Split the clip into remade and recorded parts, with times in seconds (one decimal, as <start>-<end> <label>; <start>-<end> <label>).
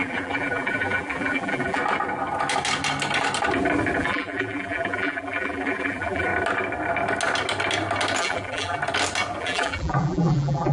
0.0-1.8 remade; 1.8-4.0 recorded; 4.0-6.3 remade; 6.3-8.2 recorded; 8.2-8.8 remade; 8.8-9.4 recorded; 9.4-10.7 remade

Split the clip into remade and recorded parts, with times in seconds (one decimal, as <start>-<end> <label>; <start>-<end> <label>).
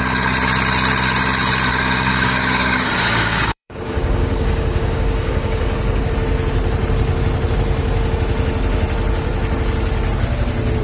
0.0-1.7 recorded; 1.7-6.1 remade; 6.1-10.8 recorded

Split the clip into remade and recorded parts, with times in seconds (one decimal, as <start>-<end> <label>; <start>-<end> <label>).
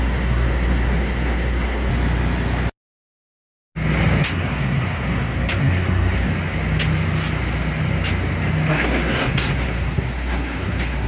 0.0-1.9 remade; 1.9-4.2 recorded; 4.2-6.3 remade; 6.3-8.7 recorded; 8.7-11.1 remade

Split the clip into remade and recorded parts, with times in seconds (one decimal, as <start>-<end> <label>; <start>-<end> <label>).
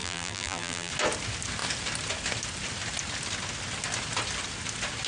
0.0-0.9 remade; 0.9-5.1 recorded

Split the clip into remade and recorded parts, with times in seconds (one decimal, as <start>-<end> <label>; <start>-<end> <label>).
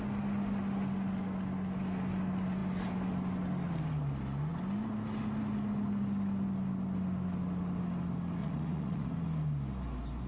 0.0-8.4 recorded; 8.4-9.1 remade; 9.1-10.3 recorded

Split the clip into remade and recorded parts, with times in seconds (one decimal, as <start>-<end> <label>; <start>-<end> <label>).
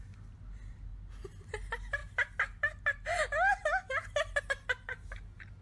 0.0-5.6 recorded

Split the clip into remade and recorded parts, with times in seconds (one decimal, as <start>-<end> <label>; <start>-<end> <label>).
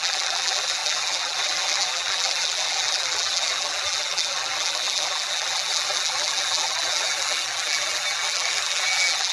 0.0-9.3 remade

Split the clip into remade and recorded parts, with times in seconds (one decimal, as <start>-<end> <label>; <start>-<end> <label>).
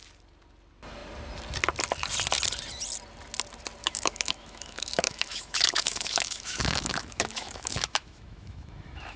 0.0-3.8 recorded; 3.8-9.2 remade